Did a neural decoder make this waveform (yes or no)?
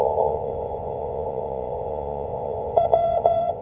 yes